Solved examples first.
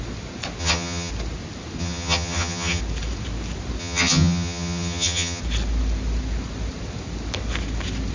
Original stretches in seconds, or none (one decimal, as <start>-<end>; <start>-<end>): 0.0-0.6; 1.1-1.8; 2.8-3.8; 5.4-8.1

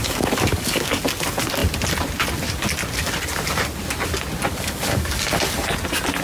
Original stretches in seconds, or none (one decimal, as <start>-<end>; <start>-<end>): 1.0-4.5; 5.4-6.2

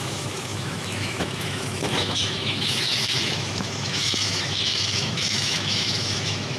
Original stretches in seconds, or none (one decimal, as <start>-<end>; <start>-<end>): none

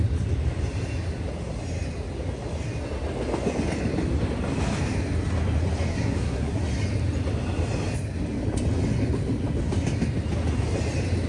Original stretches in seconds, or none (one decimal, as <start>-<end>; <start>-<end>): 0.0-5.9; 6.6-11.3